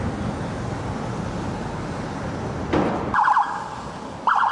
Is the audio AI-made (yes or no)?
no